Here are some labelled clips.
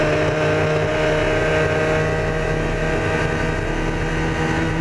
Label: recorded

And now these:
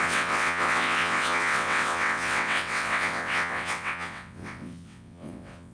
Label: remade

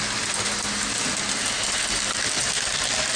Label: recorded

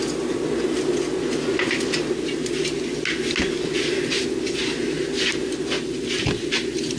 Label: recorded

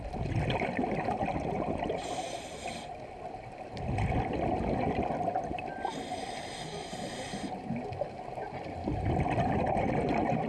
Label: recorded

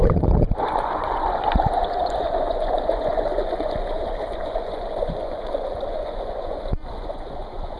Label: remade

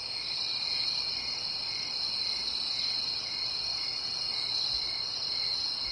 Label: recorded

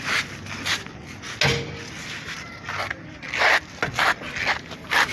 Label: recorded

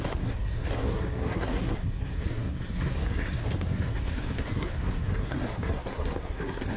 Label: remade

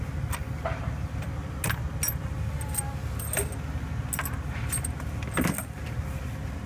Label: recorded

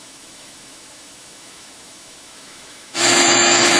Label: remade